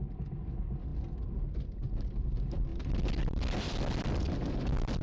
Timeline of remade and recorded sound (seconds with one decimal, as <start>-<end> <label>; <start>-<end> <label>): 0.0-2.7 recorded; 2.7-3.4 remade; 3.4-5.0 recorded